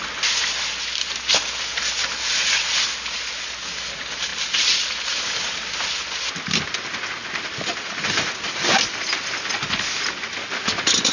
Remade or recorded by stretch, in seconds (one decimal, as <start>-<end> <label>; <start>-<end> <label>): 0.0-11.1 recorded